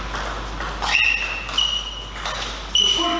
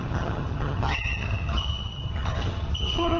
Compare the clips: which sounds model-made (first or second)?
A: second